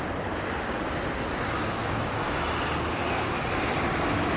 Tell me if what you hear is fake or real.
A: real